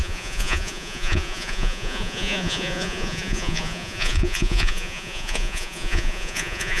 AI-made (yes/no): yes